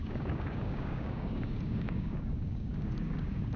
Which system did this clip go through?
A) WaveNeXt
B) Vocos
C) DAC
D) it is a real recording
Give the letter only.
C